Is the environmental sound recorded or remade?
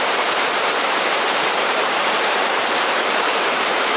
remade